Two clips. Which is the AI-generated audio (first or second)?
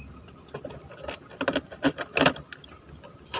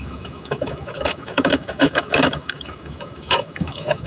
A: second